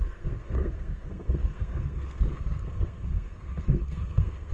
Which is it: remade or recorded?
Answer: remade